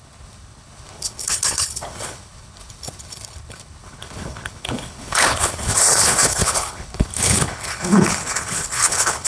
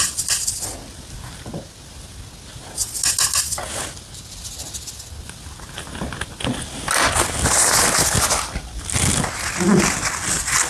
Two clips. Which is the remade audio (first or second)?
first